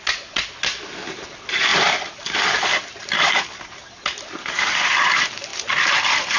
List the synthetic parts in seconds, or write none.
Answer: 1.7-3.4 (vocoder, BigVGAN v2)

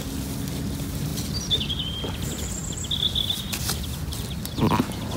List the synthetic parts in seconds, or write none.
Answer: none

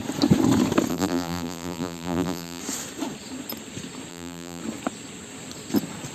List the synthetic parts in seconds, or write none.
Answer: 0.9-2.6 (vocoder, BigVGAN v2); 4.1-4.6